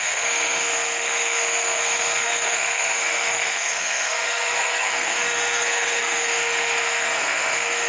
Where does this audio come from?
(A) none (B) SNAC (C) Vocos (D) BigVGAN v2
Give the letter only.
B